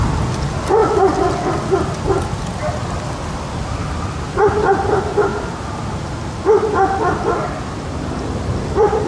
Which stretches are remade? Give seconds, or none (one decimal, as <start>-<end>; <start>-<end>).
none